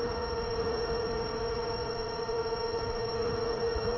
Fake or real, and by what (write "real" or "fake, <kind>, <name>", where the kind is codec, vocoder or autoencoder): fake, vocoder, Vocos